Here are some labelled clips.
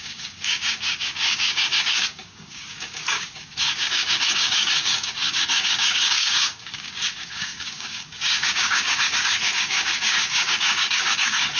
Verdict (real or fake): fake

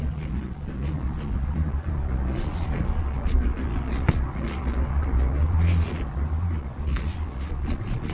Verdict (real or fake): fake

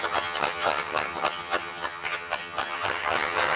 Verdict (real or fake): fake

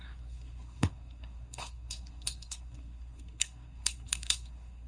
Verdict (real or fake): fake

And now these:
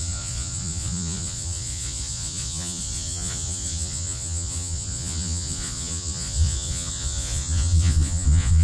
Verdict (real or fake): fake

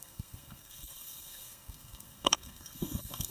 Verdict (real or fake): fake